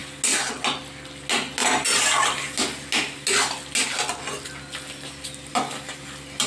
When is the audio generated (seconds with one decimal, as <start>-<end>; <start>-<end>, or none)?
none